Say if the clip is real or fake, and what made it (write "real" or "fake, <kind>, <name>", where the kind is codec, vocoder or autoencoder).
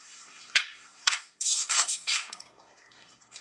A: fake, codec, SNAC